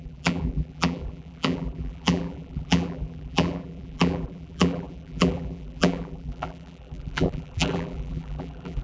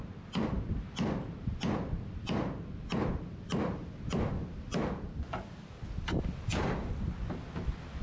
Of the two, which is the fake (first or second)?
first